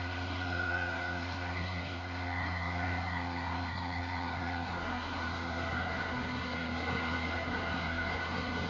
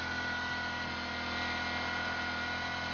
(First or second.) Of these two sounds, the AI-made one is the first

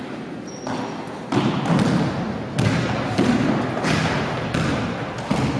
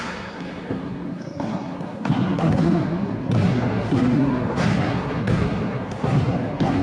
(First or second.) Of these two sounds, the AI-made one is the second